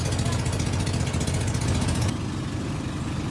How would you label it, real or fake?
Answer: real